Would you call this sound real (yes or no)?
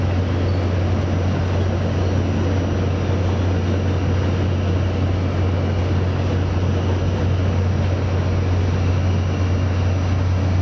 yes